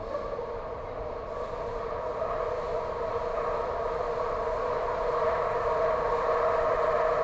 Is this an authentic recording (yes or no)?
yes